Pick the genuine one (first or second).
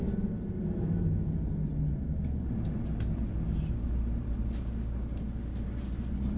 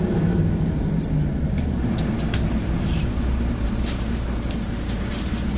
first